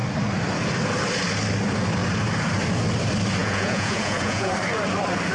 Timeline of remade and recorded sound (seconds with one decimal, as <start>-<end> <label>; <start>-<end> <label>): 0.0-3.4 recorded; 3.4-4.5 remade; 4.5-5.3 recorded